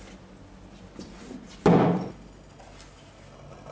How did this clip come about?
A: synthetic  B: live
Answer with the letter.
B